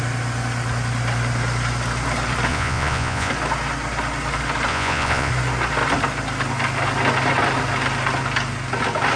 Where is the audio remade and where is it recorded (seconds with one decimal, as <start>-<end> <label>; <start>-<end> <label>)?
0.0-2.5 recorded; 2.5-3.3 remade; 3.3-4.7 recorded; 4.7-5.3 remade; 5.3-9.2 recorded